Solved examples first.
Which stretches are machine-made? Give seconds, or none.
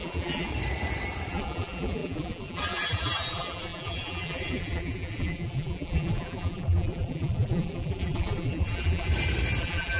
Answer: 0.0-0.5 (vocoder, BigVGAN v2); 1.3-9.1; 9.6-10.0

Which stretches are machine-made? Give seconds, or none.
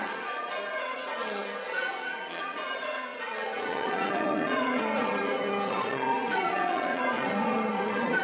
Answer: 0.0-8.2 (vocoder, Vocos)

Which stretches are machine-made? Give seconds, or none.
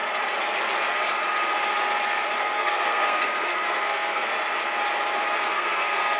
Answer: 2.4-4.3 (codec, SNAC); 5.5-6.2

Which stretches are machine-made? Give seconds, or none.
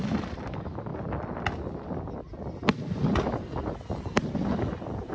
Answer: 0.0-0.9 (vocoder, BigVGAN v2); 4.0-5.1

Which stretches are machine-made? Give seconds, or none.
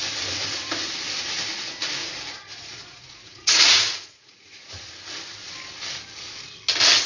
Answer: 2.0-4.9 (vocoder, Vocos)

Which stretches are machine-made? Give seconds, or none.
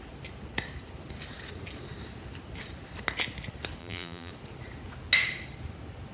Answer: 3.8-4.3 (vocoder, BigVGAN v2)